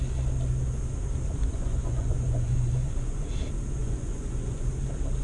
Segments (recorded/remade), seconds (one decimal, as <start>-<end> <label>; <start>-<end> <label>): 0.0-1.4 recorded; 1.4-3.3 remade; 3.3-3.8 recorded; 3.8-4.7 remade; 4.7-5.2 recorded